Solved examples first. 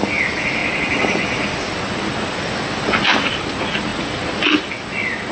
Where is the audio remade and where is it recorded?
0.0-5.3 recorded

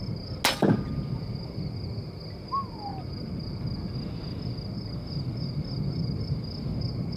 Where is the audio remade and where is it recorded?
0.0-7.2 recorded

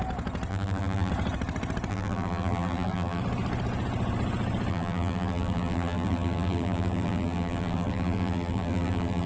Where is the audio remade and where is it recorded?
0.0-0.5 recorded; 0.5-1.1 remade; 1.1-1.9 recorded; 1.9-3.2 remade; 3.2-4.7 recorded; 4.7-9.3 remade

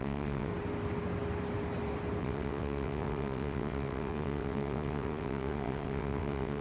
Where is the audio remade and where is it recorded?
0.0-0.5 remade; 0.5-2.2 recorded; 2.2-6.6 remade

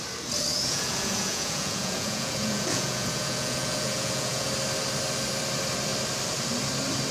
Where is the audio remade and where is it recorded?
0.0-0.5 recorded; 0.5-4.5 remade; 4.5-7.1 recorded

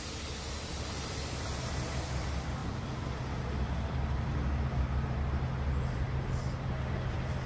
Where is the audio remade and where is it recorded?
0.0-7.5 recorded